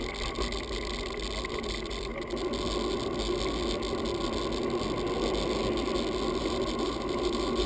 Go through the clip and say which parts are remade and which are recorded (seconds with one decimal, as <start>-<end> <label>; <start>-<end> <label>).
0.0-1.5 recorded; 1.5-2.1 remade; 2.1-6.4 recorded; 6.4-7.7 remade